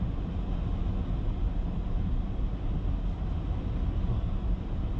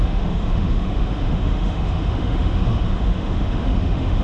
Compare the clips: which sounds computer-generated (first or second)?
second